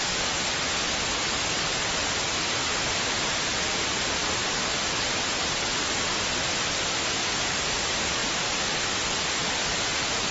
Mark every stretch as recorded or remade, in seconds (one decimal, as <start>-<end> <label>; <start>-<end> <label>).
0.0-2.0 recorded; 2.0-6.1 remade; 6.1-10.3 recorded

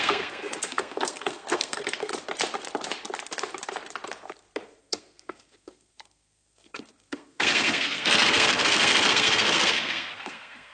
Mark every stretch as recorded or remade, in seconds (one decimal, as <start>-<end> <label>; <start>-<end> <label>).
0.0-2.1 remade; 2.1-4.8 recorded; 4.8-10.7 remade

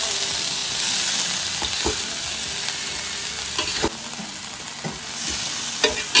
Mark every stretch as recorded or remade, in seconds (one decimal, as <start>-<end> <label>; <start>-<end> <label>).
0.0-6.2 recorded